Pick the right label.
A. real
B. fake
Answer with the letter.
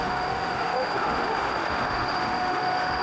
B